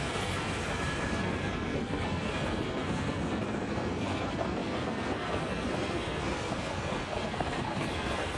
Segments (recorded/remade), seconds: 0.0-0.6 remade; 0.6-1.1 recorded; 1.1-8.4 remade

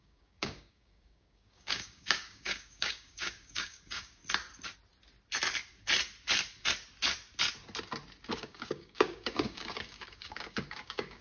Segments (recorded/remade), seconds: 0.0-4.2 remade; 4.2-8.3 recorded; 8.3-11.2 remade

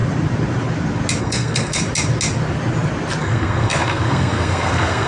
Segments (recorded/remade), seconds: 0.0-1.2 recorded; 1.2-1.8 remade; 1.8-3.2 recorded; 3.2-5.1 remade